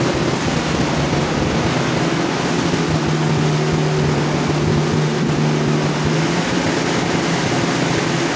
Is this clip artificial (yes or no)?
no